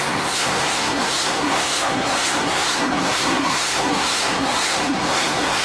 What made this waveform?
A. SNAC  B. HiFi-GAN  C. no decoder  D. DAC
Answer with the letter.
A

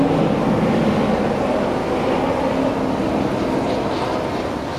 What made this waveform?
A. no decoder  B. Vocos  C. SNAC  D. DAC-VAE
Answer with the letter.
A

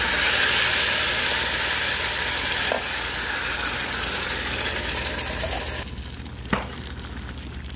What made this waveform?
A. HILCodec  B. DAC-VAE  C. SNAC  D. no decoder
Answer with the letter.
D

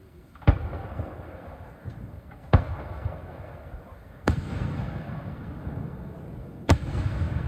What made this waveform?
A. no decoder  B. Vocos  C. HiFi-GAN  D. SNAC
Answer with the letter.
D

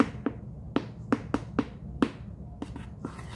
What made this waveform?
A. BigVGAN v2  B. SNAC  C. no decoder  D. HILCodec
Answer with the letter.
C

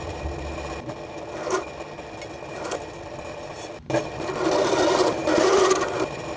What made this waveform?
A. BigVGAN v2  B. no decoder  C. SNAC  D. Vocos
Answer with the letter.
B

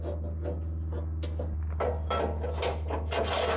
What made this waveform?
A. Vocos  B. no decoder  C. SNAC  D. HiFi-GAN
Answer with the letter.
B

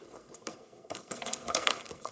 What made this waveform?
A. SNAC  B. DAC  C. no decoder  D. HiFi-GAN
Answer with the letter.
A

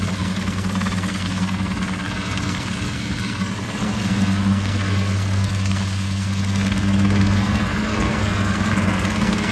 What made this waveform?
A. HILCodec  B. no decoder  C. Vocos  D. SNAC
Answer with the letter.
D